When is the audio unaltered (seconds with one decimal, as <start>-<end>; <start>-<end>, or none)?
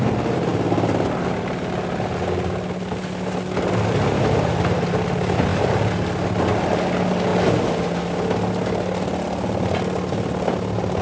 0.0-11.0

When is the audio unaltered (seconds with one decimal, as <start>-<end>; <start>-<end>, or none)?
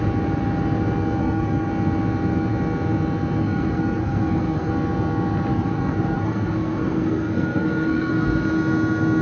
0.0-1.2; 1.7-3.4; 4.7-5.5; 8.1-9.2